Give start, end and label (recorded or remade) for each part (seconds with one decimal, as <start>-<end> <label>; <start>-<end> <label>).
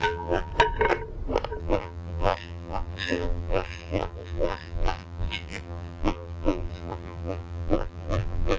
0.0-0.5 remade; 0.5-1.6 recorded; 1.6-8.6 remade